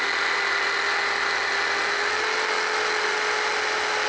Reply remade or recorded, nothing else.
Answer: recorded